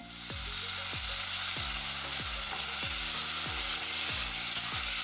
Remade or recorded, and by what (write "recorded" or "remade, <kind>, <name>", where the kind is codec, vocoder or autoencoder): recorded